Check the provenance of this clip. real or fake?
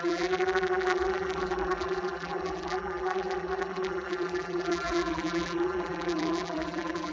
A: fake